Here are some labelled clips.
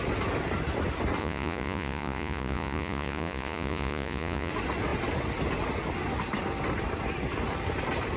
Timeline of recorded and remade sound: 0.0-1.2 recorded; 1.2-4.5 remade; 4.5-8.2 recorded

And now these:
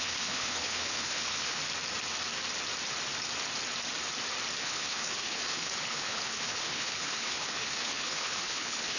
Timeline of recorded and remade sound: 0.0-1.6 remade; 1.6-4.6 recorded; 4.6-9.0 remade

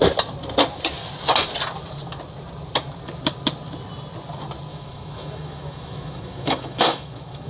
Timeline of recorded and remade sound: 0.0-4.7 recorded; 4.7-7.5 remade

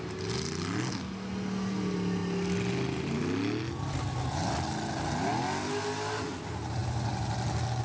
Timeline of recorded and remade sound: 0.0-7.8 recorded